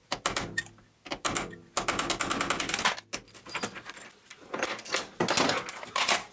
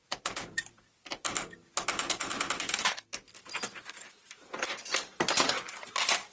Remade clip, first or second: second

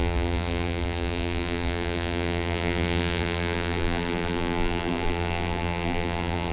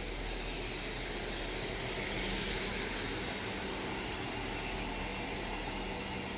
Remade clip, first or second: first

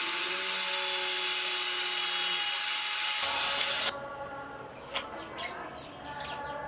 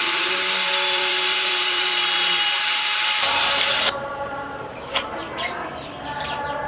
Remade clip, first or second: second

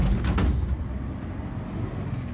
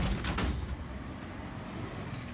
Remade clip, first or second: second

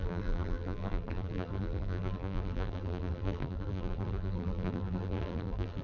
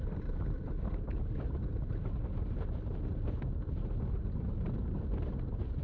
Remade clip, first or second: first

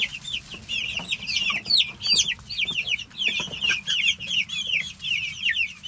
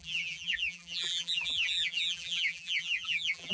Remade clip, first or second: second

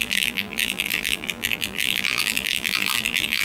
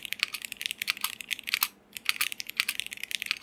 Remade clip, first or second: first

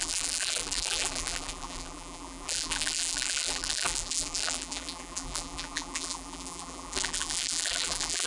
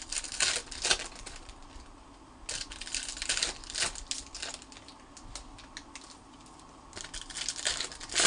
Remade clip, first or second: first